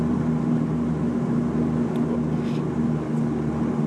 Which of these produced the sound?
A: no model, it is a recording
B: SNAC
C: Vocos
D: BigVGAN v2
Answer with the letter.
A